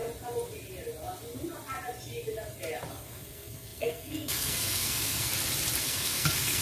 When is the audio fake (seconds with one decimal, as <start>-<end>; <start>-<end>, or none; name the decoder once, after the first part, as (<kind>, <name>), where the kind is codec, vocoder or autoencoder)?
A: 2.9-5.3 (codec, SNAC); 5.8-6.6